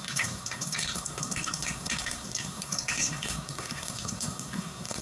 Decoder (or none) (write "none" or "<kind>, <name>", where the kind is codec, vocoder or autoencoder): codec, SNAC